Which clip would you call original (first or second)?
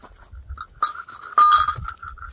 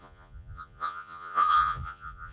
first